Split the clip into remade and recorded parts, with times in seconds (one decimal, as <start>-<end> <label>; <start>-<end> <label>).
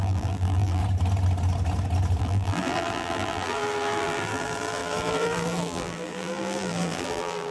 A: 0.0-0.8 remade; 0.8-2.2 recorded; 2.2-7.5 remade